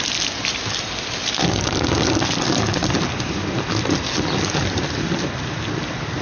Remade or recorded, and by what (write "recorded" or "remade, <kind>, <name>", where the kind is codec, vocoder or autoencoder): recorded